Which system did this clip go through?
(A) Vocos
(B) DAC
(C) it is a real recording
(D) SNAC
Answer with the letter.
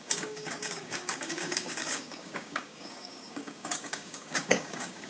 B